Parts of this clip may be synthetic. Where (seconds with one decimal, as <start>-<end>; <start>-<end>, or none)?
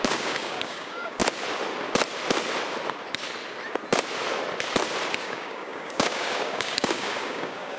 0.0-1.2; 5.2-7.8